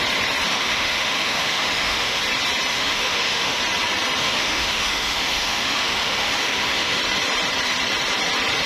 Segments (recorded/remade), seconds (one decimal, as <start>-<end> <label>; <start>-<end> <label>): 0.0-0.5 recorded; 0.5-2.2 remade; 2.2-2.7 recorded; 2.7-3.6 remade; 3.6-4.2 recorded; 4.2-7.0 remade; 7.0-8.7 recorded